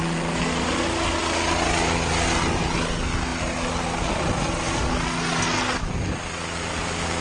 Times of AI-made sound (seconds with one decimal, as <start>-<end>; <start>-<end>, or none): none